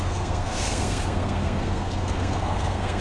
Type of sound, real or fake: fake